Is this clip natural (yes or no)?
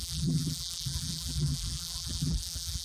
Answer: no